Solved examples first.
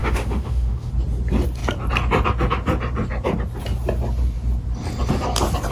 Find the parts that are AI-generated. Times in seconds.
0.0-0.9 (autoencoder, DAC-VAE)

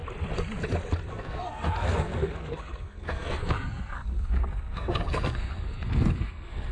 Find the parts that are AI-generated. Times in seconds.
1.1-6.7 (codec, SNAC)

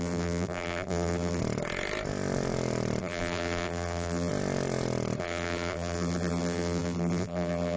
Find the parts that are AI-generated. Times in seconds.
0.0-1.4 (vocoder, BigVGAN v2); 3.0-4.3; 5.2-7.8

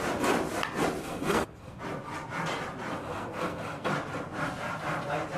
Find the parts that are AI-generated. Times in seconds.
1.0-1.8 (codec, SNAC); 3.0-3.9

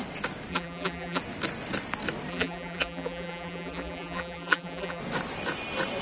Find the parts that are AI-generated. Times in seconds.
0.5-1.2 (vocoder, BigVGAN v2); 2.3-5.0

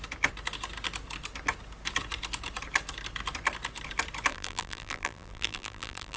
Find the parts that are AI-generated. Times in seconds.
4.3-6.2 (vocoder, BigVGAN v2)

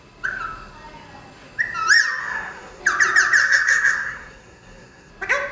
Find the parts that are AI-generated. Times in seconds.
2.2-2.8 (codec, SNAC); 3.4-5.1